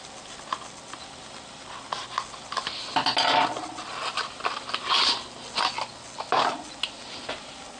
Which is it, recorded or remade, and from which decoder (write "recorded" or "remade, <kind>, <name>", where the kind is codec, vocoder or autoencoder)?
recorded